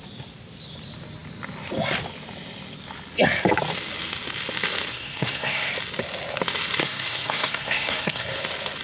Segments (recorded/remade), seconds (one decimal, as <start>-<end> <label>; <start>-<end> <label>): 0.0-4.9 recorded; 4.9-5.7 remade; 5.7-6.8 recorded; 6.8-8.4 remade; 8.4-8.8 recorded